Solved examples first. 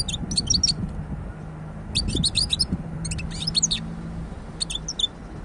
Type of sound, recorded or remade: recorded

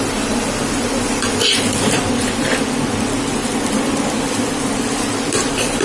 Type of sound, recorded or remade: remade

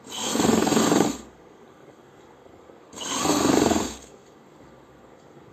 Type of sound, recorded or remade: remade